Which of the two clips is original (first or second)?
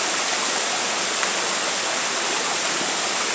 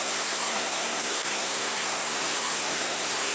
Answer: first